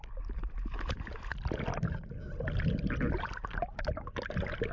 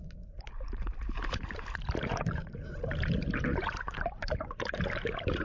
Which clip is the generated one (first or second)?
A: second